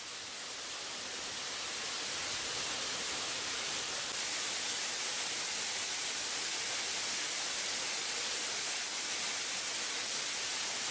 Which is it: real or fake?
real